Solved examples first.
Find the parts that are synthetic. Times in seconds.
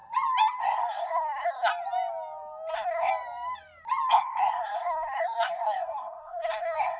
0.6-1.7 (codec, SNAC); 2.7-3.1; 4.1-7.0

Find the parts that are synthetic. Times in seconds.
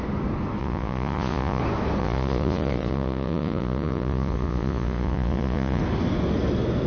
0.6-1.6 (vocoder, Vocos); 2.0-5.8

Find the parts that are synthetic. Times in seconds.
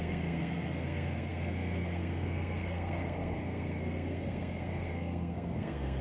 0.0-6.0 (codec, SNAC)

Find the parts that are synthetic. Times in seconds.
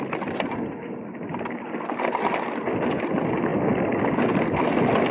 none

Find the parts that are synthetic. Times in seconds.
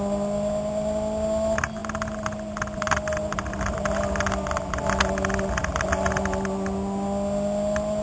none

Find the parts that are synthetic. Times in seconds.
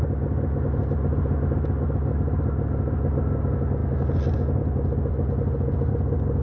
none